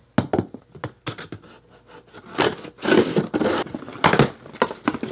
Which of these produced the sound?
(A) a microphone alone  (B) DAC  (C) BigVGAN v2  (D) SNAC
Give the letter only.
A